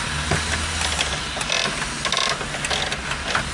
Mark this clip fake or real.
real